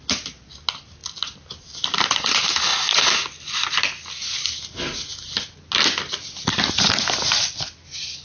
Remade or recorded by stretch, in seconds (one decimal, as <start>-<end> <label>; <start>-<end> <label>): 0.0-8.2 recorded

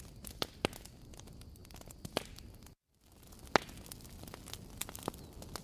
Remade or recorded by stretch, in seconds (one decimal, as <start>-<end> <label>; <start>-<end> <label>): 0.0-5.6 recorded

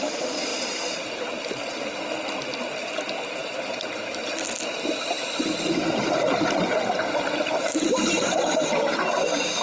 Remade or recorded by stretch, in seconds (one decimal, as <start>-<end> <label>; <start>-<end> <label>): 0.0-0.5 recorded; 0.5-2.5 remade; 2.5-9.6 recorded

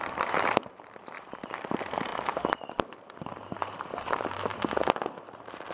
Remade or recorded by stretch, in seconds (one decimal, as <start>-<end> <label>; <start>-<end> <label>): 0.0-2.1 remade; 2.1-3.0 recorded; 3.0-4.5 remade; 4.5-5.2 recorded; 5.2-5.7 remade

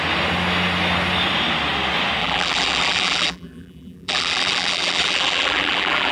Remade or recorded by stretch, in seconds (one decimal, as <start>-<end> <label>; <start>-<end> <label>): 0.0-2.2 recorded; 2.2-6.1 remade

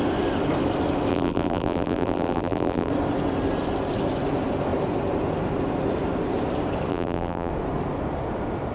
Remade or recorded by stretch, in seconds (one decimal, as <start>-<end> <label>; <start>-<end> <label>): 0.0-1.1 recorded; 1.1-2.9 remade; 2.9-6.9 recorded; 6.9-7.5 remade; 7.5-8.7 recorded

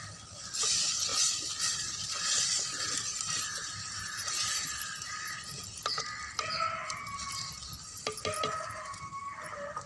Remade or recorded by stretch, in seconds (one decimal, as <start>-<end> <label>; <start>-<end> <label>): 0.0-1.1 recorded; 1.1-5.4 remade; 5.4-9.1 recorded; 9.1-9.9 remade